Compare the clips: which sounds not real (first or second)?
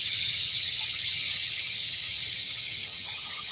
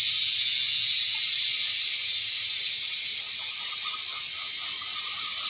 first